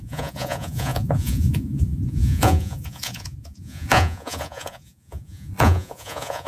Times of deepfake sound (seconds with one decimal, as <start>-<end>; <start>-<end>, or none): 0.0-6.5